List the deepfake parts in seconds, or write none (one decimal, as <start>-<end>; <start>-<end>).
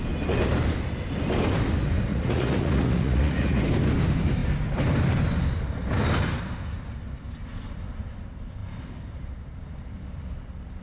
2.1-3.6